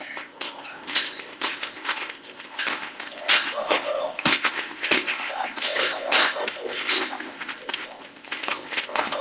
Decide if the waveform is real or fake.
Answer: fake